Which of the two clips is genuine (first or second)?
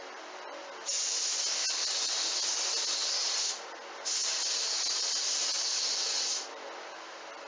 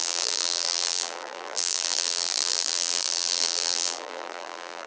first